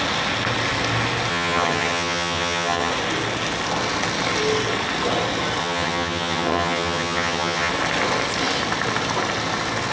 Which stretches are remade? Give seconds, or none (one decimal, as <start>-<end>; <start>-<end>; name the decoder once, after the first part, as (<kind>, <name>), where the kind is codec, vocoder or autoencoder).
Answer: 1.3-2.9 (vocoder, HiFi-GAN); 5.6-7.7